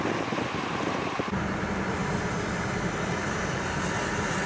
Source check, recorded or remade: recorded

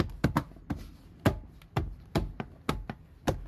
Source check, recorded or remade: recorded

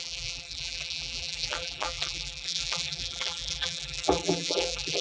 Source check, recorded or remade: remade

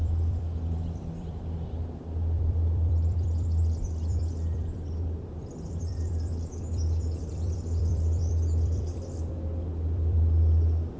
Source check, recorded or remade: remade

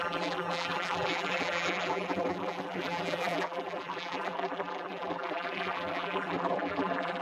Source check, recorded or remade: remade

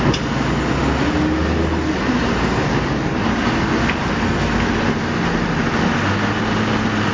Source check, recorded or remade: recorded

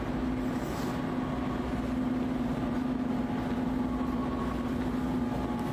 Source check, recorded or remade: recorded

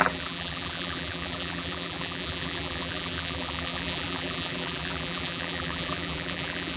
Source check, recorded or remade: remade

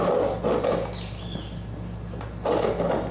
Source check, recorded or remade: recorded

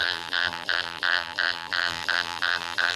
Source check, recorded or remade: remade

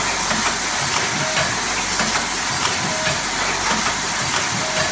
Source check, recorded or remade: recorded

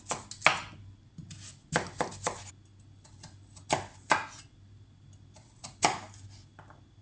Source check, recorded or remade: recorded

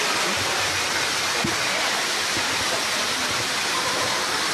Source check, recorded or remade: remade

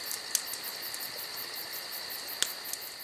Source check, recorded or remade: recorded